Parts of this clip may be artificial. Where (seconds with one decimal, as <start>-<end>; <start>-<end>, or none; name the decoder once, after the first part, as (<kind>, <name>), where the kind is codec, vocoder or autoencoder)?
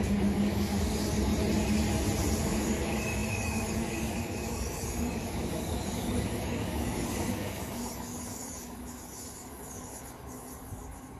0.0-1.3 (codec, DAC); 2.4-11.2